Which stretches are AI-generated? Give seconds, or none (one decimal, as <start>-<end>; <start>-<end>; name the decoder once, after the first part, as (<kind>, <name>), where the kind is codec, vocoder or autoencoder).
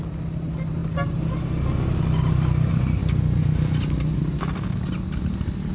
none